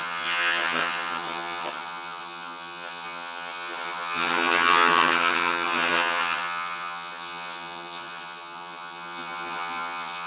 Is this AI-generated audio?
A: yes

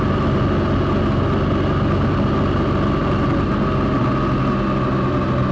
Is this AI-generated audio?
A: no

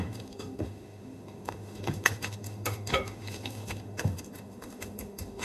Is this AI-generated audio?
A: yes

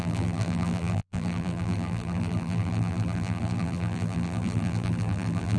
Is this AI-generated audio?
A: yes